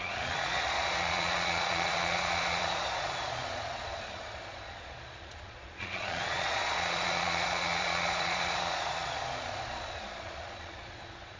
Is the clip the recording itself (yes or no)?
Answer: no